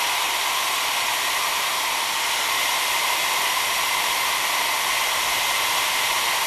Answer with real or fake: real